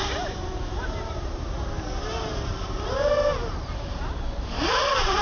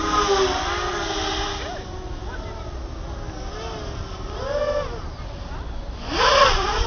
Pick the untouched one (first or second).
second